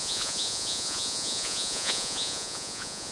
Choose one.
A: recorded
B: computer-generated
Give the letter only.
B